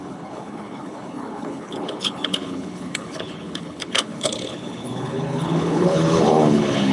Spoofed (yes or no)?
yes